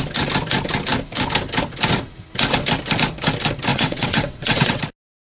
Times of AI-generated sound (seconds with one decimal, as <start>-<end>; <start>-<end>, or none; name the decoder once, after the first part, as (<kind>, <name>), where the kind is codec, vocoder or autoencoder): 3.7-4.8 (vocoder, WaveNeXt)